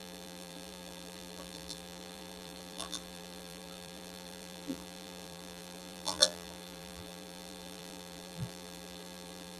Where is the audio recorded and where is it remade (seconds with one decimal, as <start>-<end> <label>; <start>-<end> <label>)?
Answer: 0.0-9.6 remade